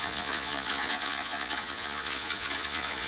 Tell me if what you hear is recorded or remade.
remade